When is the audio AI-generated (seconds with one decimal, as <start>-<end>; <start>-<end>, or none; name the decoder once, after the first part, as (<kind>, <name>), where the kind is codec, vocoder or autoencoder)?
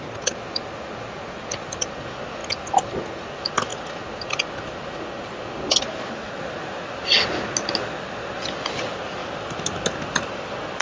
none